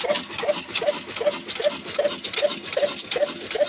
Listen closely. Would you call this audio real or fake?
real